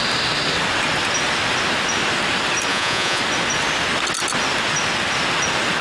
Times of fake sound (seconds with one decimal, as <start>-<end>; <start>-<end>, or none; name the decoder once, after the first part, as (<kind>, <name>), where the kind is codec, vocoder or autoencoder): 2.7-3.2 (vocoder, Vocos)